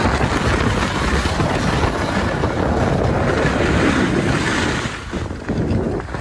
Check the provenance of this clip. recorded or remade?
recorded